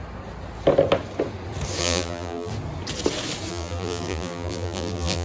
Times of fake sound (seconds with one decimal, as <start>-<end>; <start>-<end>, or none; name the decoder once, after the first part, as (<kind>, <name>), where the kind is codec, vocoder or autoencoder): 1.8-2.5 (vocoder, BigVGAN v2); 3.5-5.2